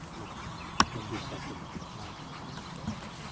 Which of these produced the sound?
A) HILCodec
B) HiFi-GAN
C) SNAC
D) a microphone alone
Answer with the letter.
D